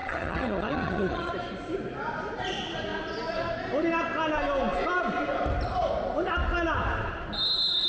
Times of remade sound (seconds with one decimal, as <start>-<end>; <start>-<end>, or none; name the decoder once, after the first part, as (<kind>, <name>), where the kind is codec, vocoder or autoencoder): 0.0-1.3 (vocoder, HiFi-GAN)